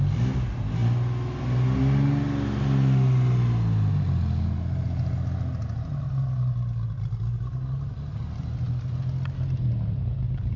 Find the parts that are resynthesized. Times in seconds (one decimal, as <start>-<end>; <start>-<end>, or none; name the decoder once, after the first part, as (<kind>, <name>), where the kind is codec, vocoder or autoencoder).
none